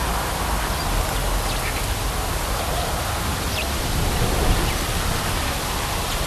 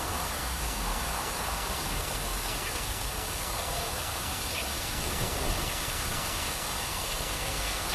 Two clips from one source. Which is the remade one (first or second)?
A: second